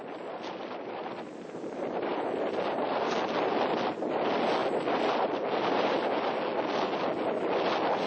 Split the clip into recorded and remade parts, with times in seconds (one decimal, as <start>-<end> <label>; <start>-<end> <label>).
0.0-8.1 recorded